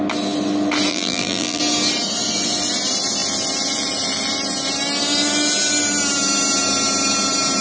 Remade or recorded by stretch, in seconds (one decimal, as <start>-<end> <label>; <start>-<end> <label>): 0.0-0.9 recorded; 0.9-1.6 remade; 1.6-7.6 recorded